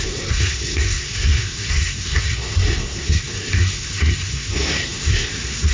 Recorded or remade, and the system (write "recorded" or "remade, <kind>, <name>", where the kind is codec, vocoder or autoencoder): remade, codec, SNAC